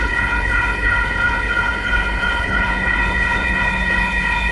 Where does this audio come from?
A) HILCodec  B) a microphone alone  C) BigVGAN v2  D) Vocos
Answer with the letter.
A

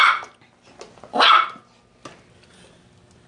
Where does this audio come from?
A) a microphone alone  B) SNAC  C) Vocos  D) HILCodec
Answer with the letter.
A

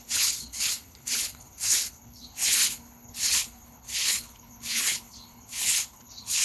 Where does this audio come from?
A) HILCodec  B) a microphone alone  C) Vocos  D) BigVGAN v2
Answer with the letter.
A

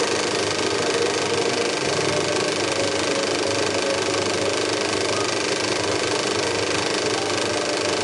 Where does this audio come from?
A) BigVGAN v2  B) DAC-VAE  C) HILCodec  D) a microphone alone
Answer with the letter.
D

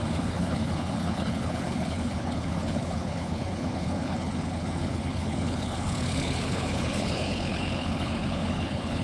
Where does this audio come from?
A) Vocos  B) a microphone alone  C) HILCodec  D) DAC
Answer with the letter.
C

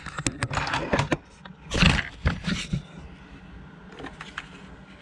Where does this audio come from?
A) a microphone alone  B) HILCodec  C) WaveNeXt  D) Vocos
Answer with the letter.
A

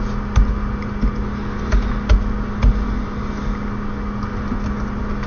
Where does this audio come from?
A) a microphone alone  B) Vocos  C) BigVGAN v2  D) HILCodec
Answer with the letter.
A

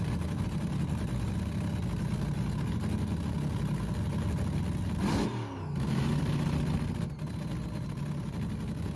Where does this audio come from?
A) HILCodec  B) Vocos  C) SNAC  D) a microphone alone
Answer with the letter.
D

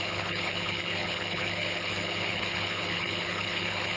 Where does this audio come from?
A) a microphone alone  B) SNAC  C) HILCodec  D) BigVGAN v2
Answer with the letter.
C